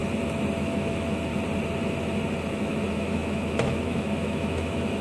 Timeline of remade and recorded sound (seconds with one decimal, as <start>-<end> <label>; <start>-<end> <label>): 0.0-0.6 recorded; 0.6-1.3 remade; 1.3-2.5 recorded; 2.5-5.0 remade